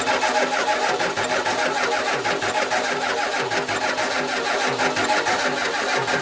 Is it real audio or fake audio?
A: real